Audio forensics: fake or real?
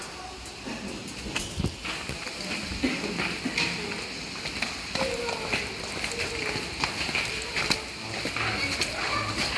real